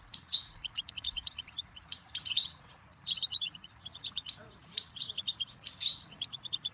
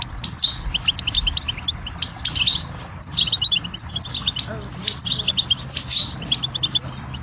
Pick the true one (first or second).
second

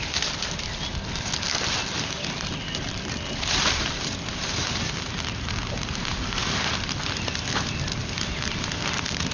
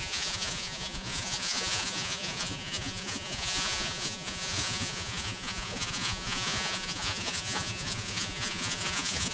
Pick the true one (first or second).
first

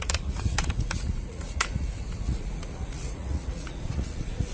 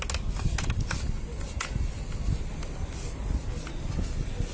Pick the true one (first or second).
second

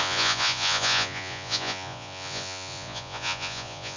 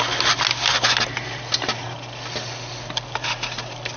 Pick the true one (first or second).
second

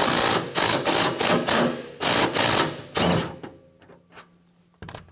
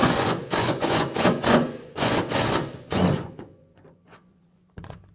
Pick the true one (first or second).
first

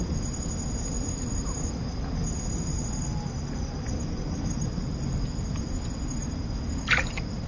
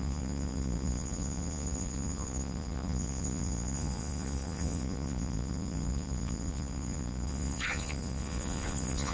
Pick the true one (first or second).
first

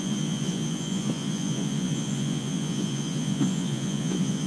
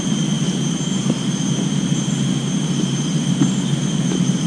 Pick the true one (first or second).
second